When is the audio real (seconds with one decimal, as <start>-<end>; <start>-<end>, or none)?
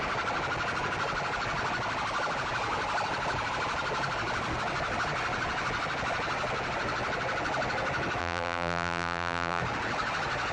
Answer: 0.0-8.2; 9.6-10.5